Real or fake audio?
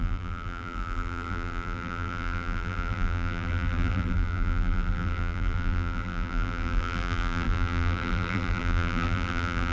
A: fake